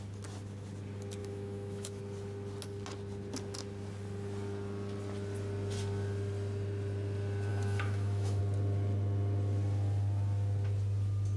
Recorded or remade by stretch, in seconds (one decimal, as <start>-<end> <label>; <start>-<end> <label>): 0.0-1.2 recorded; 1.2-2.0 remade; 2.0-7.5 recorded; 7.5-8.4 remade; 8.4-11.4 recorded